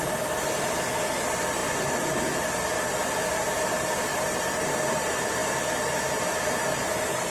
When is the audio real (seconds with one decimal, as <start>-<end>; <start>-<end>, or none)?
0.0-4.1; 4.7-7.3